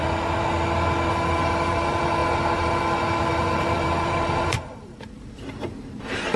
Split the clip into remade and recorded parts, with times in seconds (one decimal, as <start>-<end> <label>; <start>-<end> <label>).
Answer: 0.0-1.1 recorded; 1.1-6.4 remade

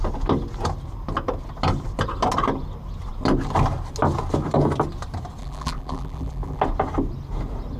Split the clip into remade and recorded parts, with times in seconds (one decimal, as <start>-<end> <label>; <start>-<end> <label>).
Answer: 0.0-5.4 recorded; 5.4-6.6 remade; 6.6-7.8 recorded

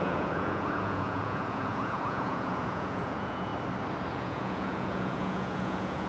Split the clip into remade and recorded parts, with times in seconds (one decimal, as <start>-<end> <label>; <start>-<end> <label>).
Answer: 0.0-3.5 remade; 3.5-4.1 recorded; 4.1-6.1 remade

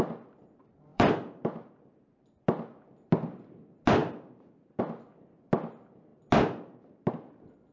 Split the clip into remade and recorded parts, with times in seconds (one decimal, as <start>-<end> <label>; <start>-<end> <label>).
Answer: 0.0-0.9 recorded; 0.9-1.7 remade; 1.7-4.0 recorded; 4.0-4.8 remade; 4.8-7.7 recorded

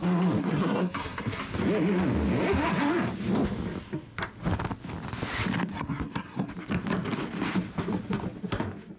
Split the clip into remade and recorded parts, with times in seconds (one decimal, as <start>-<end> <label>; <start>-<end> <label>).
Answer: 0.0-0.4 recorded; 0.4-1.4 remade; 1.4-5.7 recorded; 5.7-6.5 remade; 6.5-9.0 recorded

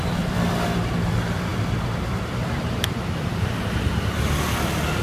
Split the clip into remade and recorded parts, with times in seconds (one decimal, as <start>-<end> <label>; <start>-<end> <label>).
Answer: 0.0-5.0 remade

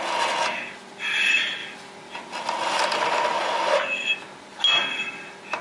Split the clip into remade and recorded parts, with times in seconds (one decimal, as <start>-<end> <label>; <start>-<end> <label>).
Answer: 0.0-5.6 recorded